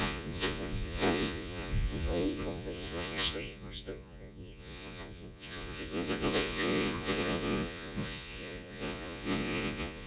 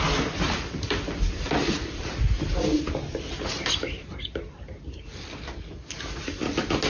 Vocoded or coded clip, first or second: first